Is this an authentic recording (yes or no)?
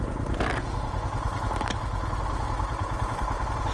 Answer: yes